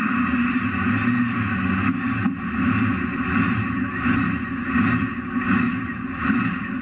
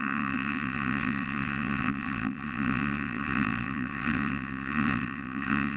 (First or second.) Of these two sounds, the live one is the first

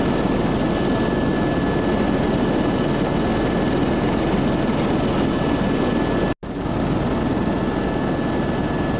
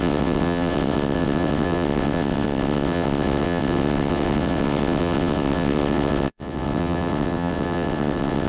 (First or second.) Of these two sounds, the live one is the first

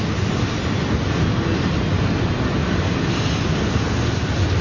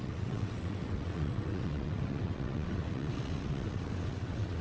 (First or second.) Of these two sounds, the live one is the first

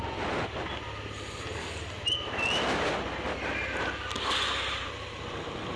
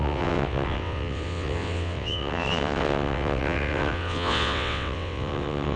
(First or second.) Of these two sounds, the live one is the first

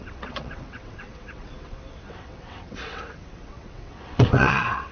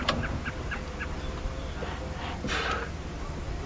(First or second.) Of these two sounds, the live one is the second